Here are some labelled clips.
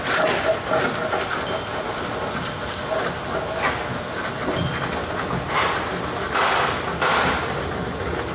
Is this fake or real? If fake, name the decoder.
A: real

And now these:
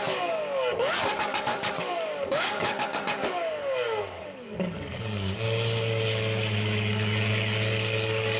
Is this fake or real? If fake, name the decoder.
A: fake, codec, DAC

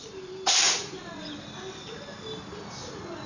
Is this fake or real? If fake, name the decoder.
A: real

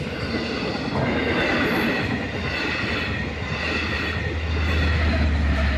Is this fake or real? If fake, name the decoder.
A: real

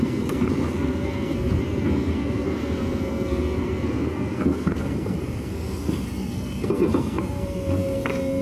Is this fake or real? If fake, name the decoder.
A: fake, codec, SNAC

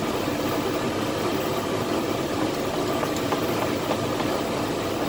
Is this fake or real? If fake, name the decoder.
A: real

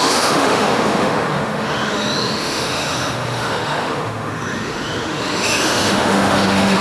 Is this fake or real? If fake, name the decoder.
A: fake, autoencoder, DAC-VAE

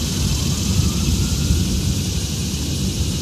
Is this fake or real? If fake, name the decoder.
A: real